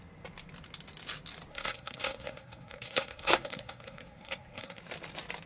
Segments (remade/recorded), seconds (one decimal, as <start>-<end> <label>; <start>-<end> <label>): 0.0-1.5 recorded; 1.5-4.8 remade; 4.8-5.5 recorded